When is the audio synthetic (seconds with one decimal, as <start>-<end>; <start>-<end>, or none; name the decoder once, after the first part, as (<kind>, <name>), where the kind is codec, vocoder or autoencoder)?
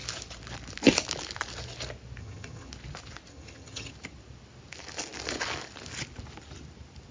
2.2-2.7 (vocoder, HiFi-GAN); 3.3-3.9